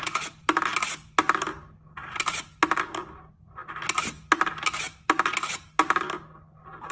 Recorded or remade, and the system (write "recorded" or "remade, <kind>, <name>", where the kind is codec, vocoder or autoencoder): recorded